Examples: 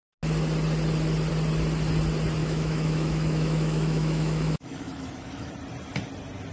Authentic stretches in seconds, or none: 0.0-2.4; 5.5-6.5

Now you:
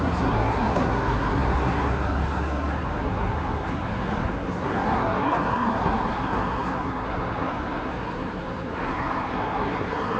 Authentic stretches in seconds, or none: none

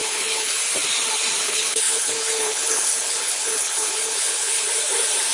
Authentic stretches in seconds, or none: 0.6-1.4; 4.6-5.3

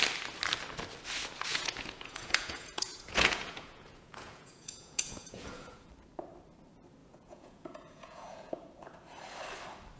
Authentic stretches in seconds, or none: 0.0-1.5; 5.9-7.0; 8.5-10.0

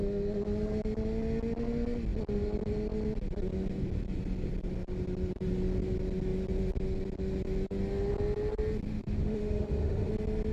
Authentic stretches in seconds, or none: 0.0-8.9; 10.1-10.5

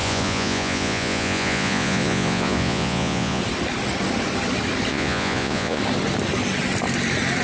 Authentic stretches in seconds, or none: 3.4-4.9; 5.8-7.4

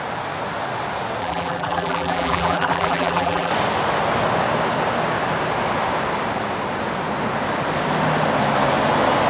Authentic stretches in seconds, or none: 0.0-1.2; 3.5-9.3